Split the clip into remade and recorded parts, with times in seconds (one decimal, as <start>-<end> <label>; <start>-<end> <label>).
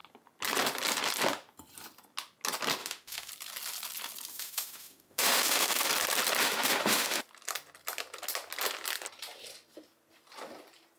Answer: 0.0-2.8 recorded; 2.8-3.3 remade; 3.3-4.3 recorded; 4.3-5.9 remade; 5.9-6.4 recorded; 6.4-7.2 remade; 7.2-11.0 recorded